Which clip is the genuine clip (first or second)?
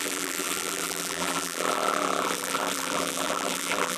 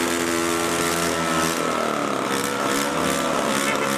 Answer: second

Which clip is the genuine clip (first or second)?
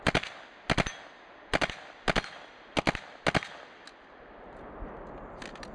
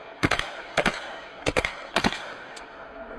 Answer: first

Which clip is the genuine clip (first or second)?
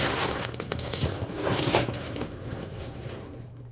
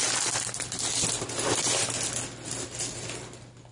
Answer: second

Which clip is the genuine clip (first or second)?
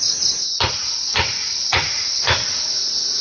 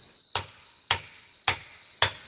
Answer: second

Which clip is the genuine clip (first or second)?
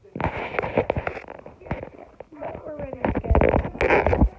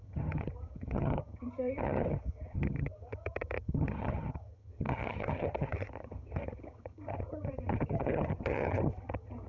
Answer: first